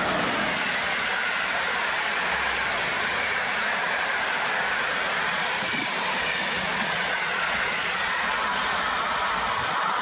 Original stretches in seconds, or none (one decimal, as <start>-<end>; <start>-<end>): 0.0-6.7; 8.2-10.0